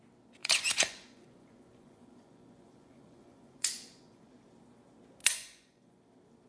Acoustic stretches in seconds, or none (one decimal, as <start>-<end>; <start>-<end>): 0.0-0.4; 4.3-5.2; 6.0-6.5